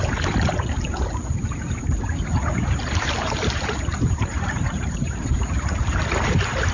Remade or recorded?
remade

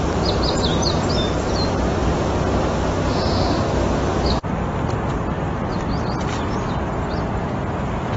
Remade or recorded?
recorded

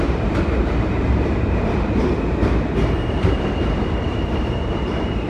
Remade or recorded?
remade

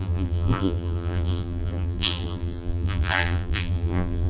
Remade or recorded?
remade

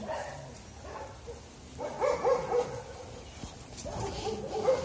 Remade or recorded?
recorded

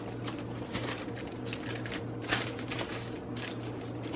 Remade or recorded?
recorded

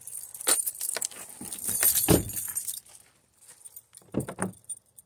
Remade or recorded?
remade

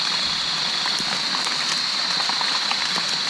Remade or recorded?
recorded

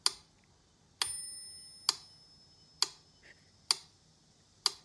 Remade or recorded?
recorded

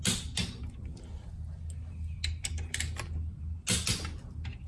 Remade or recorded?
recorded